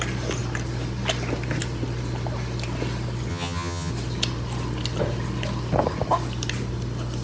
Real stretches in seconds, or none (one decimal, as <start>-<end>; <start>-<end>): 0.0-3.3; 3.9-7.2